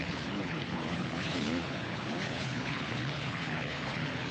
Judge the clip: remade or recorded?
remade